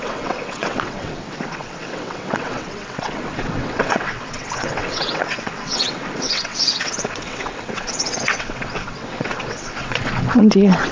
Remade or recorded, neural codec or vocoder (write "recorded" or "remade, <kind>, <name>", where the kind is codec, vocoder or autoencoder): remade, vocoder, WaveNeXt